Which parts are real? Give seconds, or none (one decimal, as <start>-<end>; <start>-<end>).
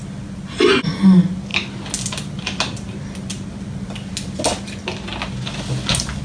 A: 0.0-6.2